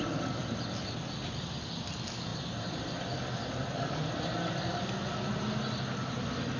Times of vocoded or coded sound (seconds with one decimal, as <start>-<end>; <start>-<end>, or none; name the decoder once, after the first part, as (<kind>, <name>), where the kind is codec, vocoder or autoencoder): 2.3-3.0 (vocoder, BigVGAN v2)